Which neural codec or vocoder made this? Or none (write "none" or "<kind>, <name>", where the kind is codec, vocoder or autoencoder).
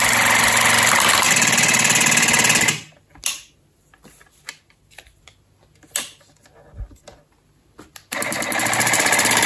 none